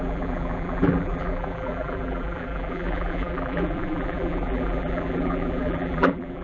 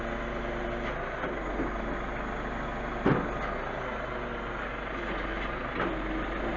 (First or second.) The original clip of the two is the second